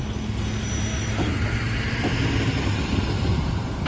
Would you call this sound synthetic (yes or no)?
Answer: no